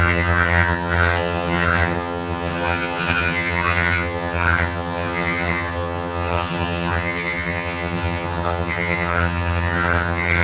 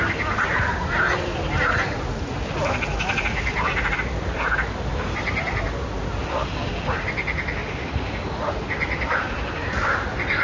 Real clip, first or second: second